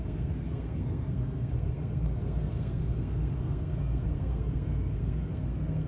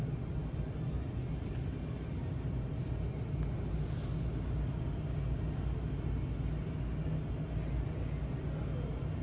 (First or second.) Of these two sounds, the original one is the second